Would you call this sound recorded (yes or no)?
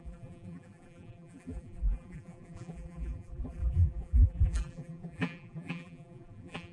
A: no